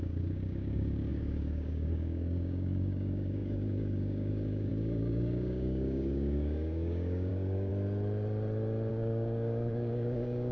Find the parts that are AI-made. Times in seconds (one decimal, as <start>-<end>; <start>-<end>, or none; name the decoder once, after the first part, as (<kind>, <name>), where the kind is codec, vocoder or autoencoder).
0.0-7.7 (codec, DAC); 8.9-10.5